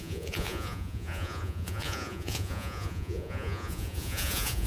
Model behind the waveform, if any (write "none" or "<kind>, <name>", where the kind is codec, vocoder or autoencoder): vocoder, Vocos